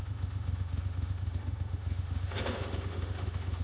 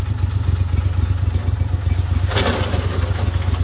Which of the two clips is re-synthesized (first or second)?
first